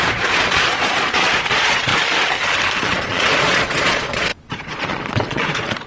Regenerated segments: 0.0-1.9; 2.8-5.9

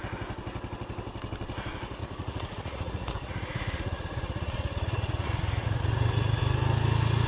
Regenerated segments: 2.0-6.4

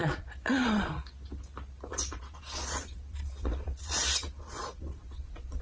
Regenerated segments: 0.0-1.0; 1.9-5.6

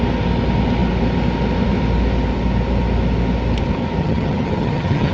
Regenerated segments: 4.0-5.1

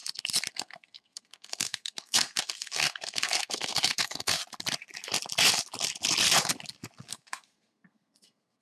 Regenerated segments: 0.5-4.4; 7.1-8.6

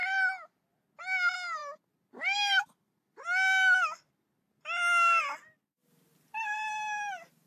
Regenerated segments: none

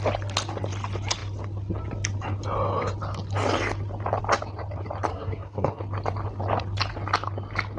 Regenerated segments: 5.1-5.8

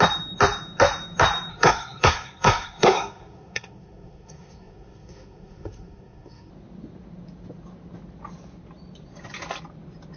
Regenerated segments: 1.5-6.5